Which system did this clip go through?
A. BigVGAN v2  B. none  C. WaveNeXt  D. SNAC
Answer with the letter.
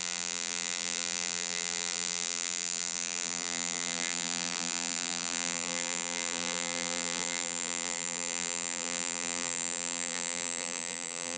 A